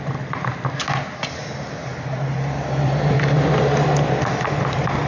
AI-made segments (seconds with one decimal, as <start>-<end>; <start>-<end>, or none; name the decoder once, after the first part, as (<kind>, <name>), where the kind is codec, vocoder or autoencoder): 1.9-5.1 (vocoder, BigVGAN v2)